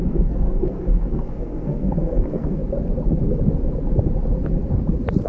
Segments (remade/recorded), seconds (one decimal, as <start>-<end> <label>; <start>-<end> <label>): 0.0-2.6 remade; 2.6-5.3 recorded